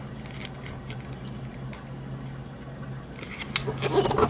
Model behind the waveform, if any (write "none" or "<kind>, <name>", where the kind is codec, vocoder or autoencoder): none